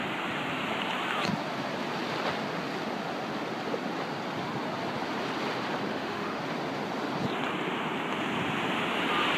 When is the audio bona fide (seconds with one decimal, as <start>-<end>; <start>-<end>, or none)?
0.0-5.9; 6.4-9.4

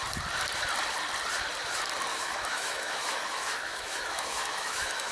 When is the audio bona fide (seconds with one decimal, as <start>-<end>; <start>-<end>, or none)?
0.0-2.1

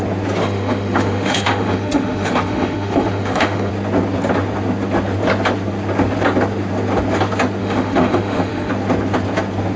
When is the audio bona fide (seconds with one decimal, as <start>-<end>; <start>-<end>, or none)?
0.0-0.4; 3.7-7.6; 8.7-9.8

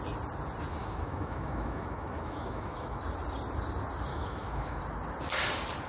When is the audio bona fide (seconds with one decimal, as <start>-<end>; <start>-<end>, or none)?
0.0-0.8; 3.0-4.1; 4.8-5.9

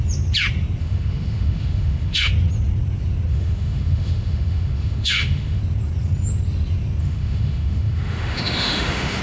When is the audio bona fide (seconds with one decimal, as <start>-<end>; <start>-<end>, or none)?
0.0-0.8; 2.3-3.3; 5.6-7.0

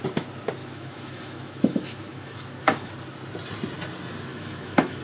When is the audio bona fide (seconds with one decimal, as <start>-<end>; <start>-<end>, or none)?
0.0-0.6; 2.9-4.3

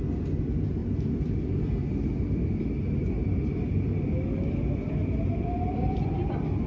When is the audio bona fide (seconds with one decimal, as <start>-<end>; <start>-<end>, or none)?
0.0-6.7